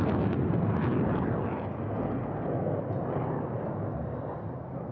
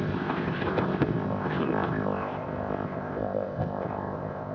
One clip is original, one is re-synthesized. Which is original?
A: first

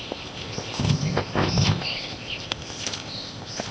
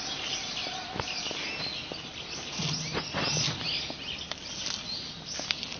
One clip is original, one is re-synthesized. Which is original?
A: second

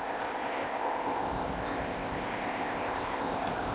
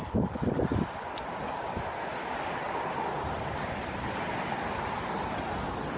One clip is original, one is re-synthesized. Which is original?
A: second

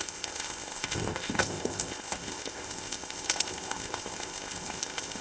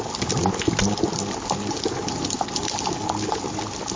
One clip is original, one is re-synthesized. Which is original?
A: second